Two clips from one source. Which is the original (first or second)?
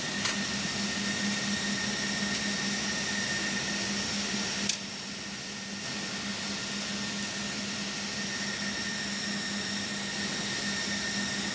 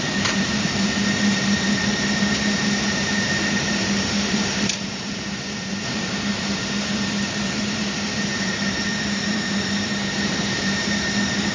first